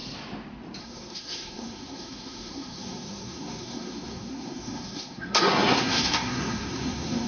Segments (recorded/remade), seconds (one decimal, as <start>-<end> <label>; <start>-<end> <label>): 0.0-0.8 recorded; 0.8-7.3 remade